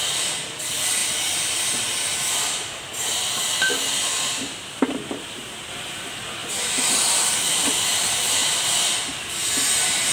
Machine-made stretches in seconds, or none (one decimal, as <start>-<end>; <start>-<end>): 1.0-1.6; 2.1-5.4; 6.4-7.9; 8.4-10.1